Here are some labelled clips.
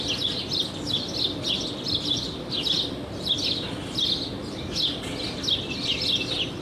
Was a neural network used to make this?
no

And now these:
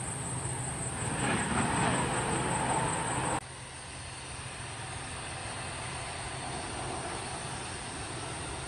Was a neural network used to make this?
no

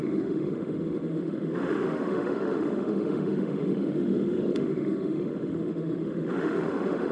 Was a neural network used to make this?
yes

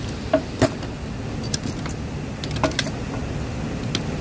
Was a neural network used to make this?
no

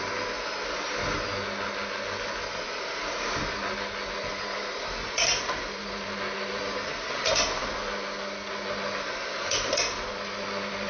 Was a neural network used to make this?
no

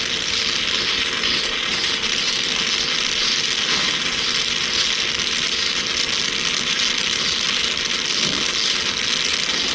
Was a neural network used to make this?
no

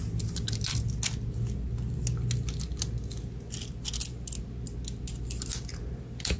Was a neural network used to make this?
no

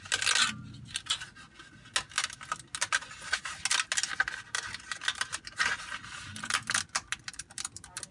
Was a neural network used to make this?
no